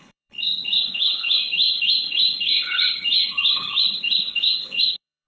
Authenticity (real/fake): fake